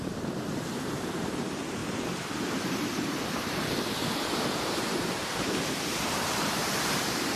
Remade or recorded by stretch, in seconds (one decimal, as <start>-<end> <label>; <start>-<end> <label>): 0.0-7.4 remade